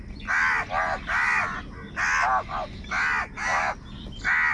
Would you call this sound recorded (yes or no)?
yes